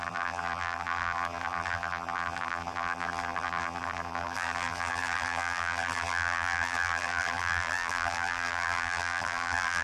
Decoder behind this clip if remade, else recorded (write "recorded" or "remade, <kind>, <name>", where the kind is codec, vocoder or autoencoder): remade, vocoder, BigVGAN v2